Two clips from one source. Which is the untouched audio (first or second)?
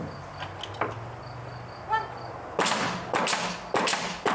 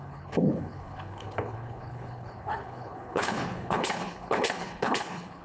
first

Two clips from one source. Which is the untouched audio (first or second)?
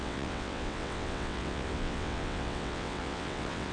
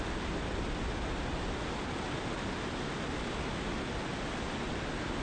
second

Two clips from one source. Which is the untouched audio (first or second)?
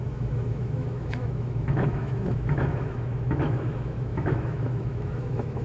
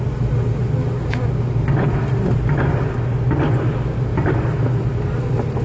second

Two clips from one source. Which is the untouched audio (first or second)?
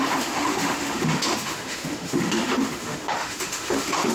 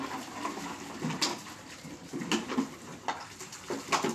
second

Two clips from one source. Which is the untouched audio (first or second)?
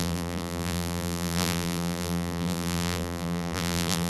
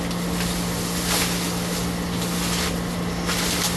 second